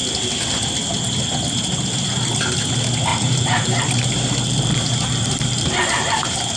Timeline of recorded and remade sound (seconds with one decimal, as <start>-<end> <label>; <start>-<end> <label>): 0.0-3.1 recorded; 3.1-6.6 remade